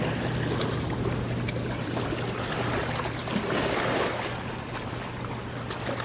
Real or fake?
real